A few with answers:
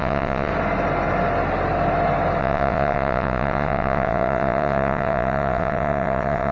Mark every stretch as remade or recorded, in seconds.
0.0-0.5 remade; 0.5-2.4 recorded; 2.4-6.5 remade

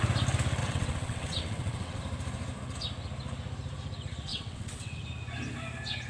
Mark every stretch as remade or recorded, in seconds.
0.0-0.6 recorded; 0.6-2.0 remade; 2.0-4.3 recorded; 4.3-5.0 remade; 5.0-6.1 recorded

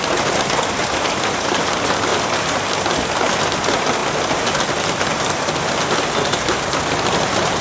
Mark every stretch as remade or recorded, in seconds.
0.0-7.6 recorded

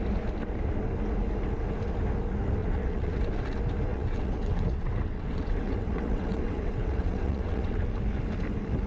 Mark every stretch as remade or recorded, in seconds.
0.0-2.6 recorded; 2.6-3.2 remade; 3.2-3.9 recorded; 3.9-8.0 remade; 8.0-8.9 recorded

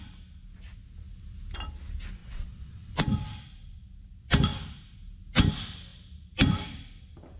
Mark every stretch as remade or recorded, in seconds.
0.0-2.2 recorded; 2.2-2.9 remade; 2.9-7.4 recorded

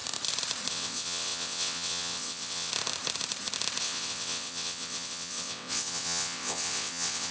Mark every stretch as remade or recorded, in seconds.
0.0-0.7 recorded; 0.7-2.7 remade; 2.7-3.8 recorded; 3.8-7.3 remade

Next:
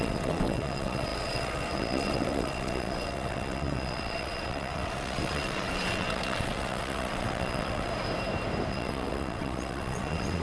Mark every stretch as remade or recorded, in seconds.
0.0-7.9 remade; 7.9-8.7 recorded; 8.7-10.4 remade